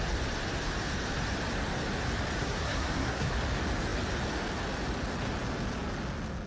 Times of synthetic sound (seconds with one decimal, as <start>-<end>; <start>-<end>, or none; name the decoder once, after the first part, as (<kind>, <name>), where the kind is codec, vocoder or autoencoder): 2.4-3.3 (codec, SNAC)